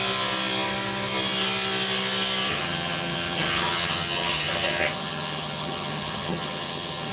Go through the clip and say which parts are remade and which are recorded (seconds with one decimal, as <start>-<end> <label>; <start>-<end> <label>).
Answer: 0.0-2.5 recorded; 2.5-7.1 remade